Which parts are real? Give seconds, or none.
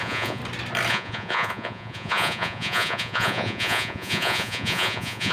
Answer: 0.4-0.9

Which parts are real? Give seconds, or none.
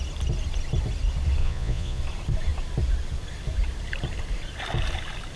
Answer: 0.0-1.4; 2.0-5.4